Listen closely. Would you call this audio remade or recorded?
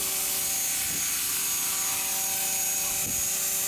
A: recorded